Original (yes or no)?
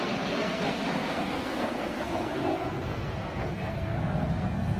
no